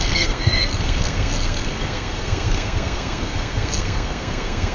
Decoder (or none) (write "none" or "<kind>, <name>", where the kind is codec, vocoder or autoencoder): codec, SNAC